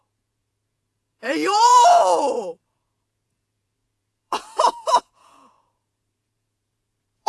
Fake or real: fake